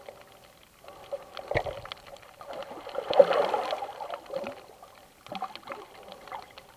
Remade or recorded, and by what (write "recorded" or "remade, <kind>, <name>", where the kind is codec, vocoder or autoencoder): recorded